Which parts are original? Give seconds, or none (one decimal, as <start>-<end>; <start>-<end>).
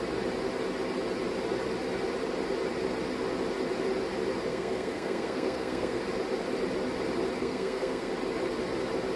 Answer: 0.0-4.5; 6.0-7.4; 8.1-9.2